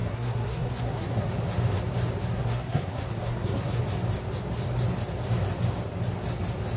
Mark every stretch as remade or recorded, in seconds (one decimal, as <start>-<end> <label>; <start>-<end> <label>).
0.0-1.3 remade; 1.3-2.3 recorded; 2.3-3.8 remade; 3.8-6.8 recorded